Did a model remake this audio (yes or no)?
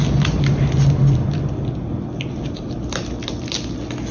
no